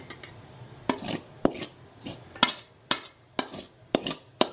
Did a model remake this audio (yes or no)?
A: no